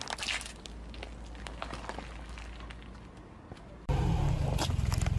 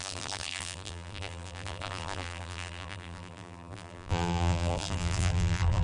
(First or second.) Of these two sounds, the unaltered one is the first